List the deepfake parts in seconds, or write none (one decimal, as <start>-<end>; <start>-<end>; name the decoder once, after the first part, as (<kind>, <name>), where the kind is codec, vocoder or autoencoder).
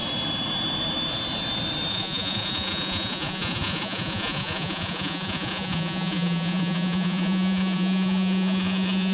1.9-9.1 (vocoder, Vocos)